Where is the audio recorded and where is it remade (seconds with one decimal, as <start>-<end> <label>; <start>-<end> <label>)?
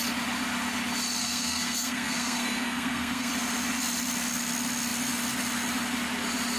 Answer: 0.0-1.2 recorded; 1.2-3.3 remade; 3.3-6.6 recorded